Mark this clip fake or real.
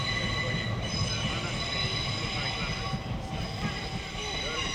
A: real